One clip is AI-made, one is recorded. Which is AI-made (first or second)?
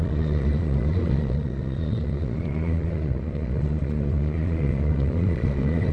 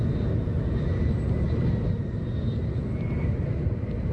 first